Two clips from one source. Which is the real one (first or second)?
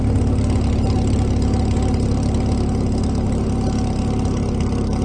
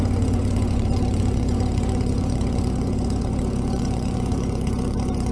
first